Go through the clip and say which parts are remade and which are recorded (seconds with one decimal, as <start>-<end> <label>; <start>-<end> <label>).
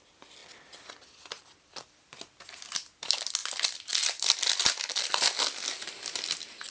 0.0-6.7 recorded